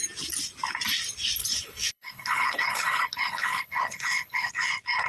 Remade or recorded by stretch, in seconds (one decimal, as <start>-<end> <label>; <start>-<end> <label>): 0.0-1.4 recorded; 1.4-4.5 remade; 4.5-5.1 recorded